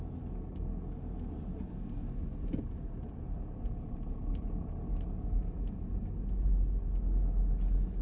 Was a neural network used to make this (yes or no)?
no